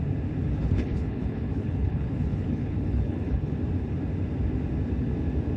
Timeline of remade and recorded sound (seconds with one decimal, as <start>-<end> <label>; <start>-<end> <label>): 0.0-0.6 recorded; 0.6-3.5 remade; 3.5-5.6 recorded